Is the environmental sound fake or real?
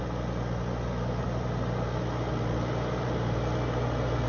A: real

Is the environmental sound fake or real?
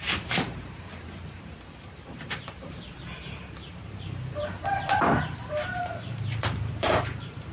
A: fake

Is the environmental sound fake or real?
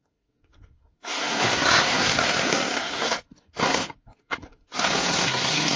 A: fake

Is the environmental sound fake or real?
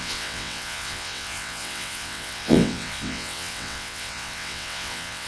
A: fake